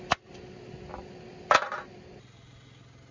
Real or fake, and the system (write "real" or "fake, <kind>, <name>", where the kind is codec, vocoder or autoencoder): real